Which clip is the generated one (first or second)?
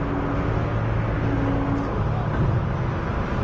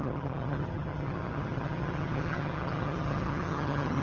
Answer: second